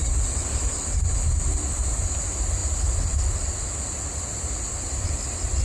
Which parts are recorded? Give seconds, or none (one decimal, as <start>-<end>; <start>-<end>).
0.0-5.6